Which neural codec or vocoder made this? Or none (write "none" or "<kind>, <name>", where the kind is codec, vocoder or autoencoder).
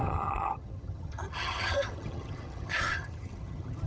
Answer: vocoder, HiFi-GAN